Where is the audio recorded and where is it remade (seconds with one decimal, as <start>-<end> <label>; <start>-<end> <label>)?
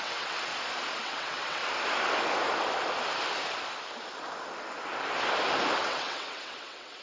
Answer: 0.0-0.5 remade; 0.5-1.0 recorded; 1.0-1.6 remade; 1.6-5.8 recorded; 5.8-7.0 remade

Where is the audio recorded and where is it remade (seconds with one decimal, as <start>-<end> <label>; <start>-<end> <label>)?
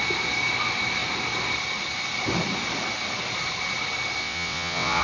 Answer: 0.0-4.2 recorded; 4.2-5.0 remade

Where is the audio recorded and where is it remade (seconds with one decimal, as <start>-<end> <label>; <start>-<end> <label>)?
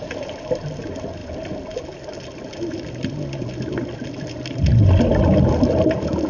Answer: 0.0-6.3 recorded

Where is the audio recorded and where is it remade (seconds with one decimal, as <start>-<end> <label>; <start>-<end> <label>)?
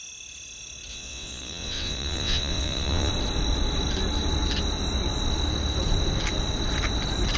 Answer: 0.0-0.9 recorded; 0.9-3.1 remade; 3.1-7.4 recorded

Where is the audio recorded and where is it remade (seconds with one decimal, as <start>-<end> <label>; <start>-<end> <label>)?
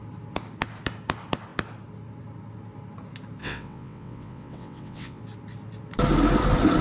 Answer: 0.0-3.4 recorded; 3.4-5.2 remade; 5.2-6.8 recorded